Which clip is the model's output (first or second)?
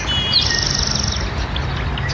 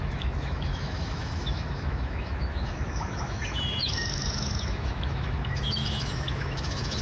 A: second